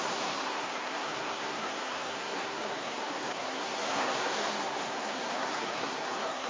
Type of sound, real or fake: fake